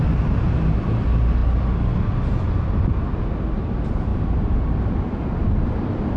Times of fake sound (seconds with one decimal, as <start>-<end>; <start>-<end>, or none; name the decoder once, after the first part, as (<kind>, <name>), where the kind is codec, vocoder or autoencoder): none